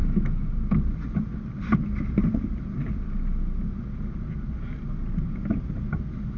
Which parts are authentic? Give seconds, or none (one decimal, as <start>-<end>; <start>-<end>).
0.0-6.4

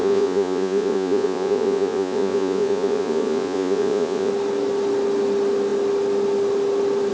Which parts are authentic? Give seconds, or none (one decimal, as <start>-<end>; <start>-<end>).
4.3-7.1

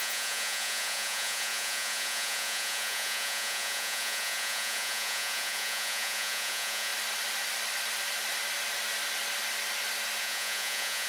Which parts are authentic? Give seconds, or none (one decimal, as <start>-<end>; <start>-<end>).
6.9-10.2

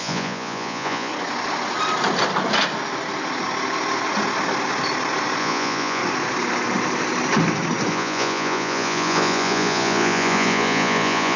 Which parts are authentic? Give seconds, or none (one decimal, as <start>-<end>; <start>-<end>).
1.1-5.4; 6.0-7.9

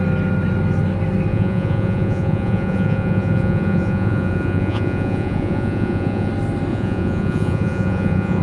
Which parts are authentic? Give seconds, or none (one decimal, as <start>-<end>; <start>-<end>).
0.0-1.3; 6.3-6.7

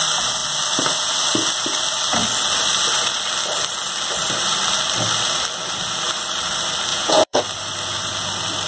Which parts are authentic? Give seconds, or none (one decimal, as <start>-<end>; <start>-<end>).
0.0-6.9; 7.4-8.7

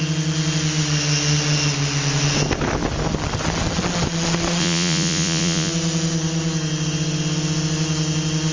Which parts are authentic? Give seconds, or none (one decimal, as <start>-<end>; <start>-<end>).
0.0-4.6; 5.7-8.5